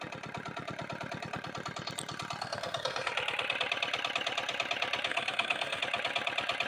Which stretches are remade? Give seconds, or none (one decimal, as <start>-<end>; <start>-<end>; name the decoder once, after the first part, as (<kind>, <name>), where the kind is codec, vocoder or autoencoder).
2.4-3.1 (codec, SNAC); 5.1-5.8